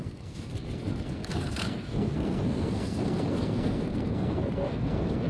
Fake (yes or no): yes